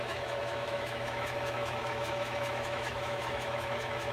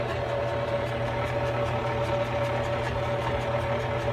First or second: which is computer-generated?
first